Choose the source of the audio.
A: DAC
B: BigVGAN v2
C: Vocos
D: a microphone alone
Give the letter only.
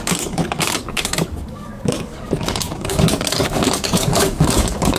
A